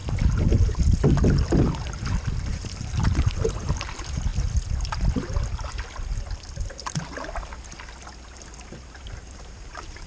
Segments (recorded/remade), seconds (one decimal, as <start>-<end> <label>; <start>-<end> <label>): 0.0-2.5 recorded; 2.5-4.3 remade; 4.3-8.7 recorded; 8.7-10.1 remade